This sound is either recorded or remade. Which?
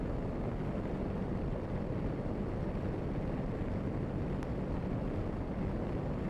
recorded